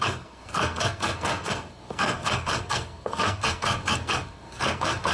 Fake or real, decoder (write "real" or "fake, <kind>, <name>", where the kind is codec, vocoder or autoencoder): fake, codec, SNAC